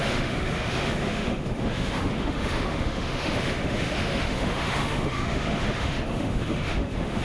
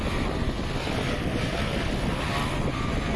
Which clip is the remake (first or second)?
first